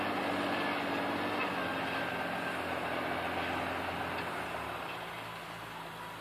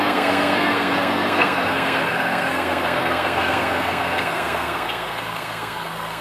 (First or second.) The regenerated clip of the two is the second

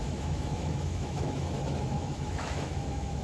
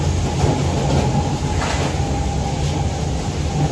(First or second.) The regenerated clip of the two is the first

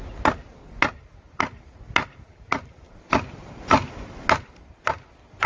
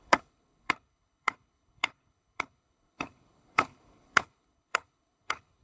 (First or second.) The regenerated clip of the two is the second